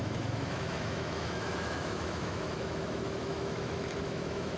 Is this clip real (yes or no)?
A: no